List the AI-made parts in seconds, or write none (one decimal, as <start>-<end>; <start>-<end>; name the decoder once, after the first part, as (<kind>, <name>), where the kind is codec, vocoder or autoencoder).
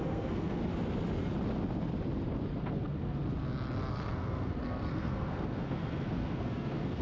0.0-0.6 (codec, SNAC); 2.6-3.2; 3.9-7.0